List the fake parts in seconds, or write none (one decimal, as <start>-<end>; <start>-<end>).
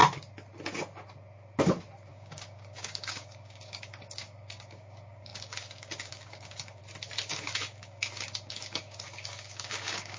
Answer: 2.1-6.8; 7.3-10.2